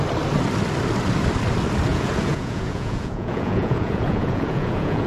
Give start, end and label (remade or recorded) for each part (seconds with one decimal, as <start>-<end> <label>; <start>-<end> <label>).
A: 0.0-1.9 recorded; 1.9-5.1 remade